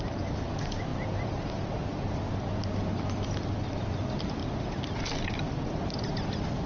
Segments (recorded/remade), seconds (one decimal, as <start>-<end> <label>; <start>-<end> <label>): 0.0-0.9 remade; 0.9-3.1 recorded; 3.1-4.4 remade; 4.4-6.3 recorded; 6.3-6.7 remade